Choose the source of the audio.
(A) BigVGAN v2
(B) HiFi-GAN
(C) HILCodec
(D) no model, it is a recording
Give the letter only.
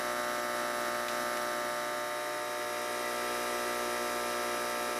D